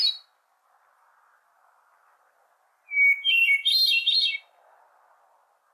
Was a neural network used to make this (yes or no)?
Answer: no